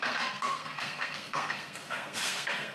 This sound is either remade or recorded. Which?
remade